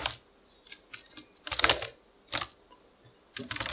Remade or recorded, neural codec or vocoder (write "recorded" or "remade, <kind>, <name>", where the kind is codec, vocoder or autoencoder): recorded